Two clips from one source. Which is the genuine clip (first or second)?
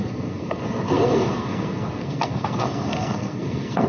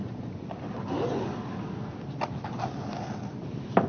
second